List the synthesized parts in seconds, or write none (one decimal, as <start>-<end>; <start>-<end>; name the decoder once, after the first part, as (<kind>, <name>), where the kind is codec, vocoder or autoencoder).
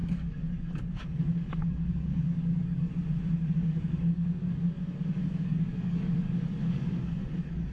0.0-2.9 (codec, DAC); 3.4-7.7